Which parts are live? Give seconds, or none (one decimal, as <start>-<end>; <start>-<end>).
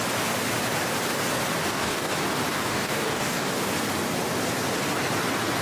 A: 0.0-1.6; 2.1-2.5; 3.7-5.6